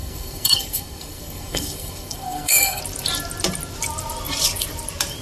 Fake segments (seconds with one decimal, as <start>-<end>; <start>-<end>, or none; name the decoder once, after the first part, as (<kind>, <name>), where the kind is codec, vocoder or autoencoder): 0.0-2.8 (codec, SNAC)